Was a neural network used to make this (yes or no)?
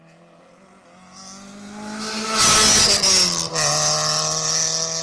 no